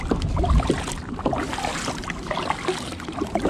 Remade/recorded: recorded